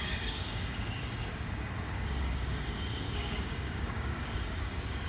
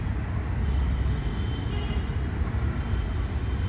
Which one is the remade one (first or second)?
first